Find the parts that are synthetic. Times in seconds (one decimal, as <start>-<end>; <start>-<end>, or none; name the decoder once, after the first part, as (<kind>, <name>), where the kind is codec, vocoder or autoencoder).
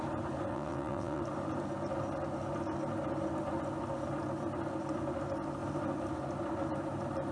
0.5-1.2 (vocoder, WaveNeXt)